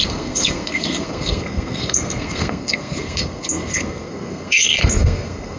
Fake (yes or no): yes